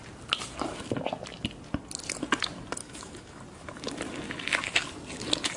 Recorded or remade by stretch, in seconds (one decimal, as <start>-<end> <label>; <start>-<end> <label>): 0.0-2.8 recorded; 2.8-3.4 remade; 3.4-5.6 recorded